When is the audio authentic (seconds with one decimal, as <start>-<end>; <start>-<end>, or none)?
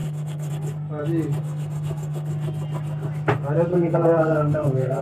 0.5-1.4; 2.3-3.7